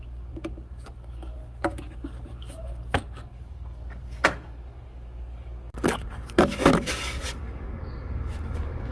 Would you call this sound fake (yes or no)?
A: yes